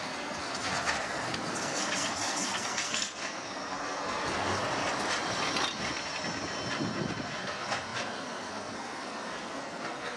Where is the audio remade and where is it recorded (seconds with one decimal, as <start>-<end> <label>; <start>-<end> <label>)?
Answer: 0.0-4.6 remade; 4.6-7.4 recorded; 7.4-10.2 remade